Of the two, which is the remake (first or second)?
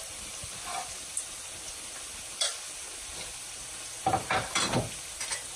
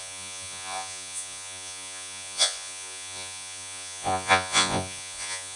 second